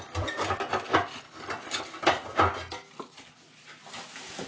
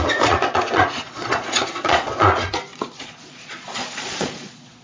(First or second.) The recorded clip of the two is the first